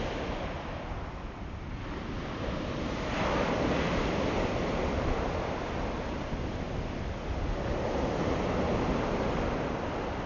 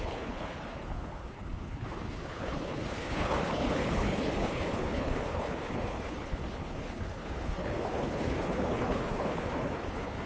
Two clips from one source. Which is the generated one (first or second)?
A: second